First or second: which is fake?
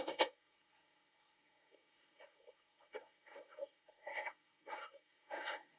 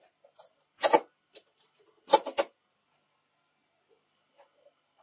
first